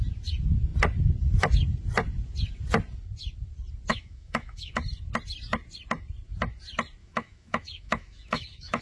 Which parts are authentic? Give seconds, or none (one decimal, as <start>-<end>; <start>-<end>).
0.0-3.9; 4.8-7.0